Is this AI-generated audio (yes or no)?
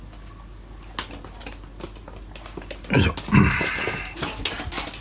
no